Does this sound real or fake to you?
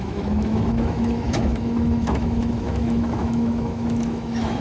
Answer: fake